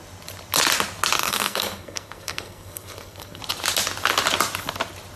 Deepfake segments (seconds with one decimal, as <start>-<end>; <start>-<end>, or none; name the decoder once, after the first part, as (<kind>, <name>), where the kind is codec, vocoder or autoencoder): 1.2-3.4 (codec, SNAC)